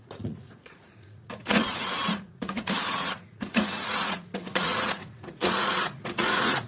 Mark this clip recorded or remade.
remade